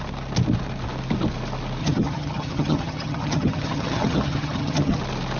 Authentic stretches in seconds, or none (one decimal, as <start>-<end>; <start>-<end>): 0.0-1.8; 5.0-5.4